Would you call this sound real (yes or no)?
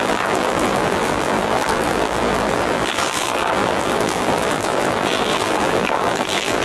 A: no